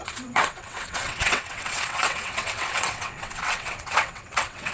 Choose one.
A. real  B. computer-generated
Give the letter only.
B